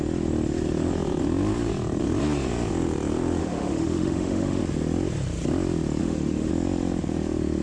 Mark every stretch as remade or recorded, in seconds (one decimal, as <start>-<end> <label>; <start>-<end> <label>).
0.0-3.4 recorded; 3.4-4.6 remade; 4.6-6.0 recorded; 6.0-6.5 remade; 6.5-7.6 recorded